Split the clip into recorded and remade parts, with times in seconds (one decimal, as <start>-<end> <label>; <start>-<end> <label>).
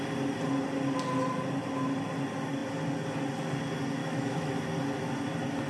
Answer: 0.0-4.0 recorded; 4.0-4.5 remade; 4.5-5.7 recorded